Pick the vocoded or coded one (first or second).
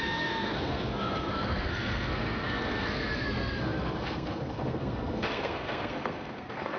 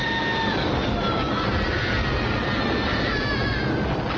first